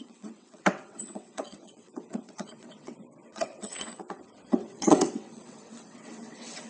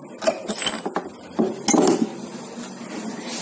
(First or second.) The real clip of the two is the second